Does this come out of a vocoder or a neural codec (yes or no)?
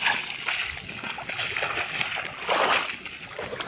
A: no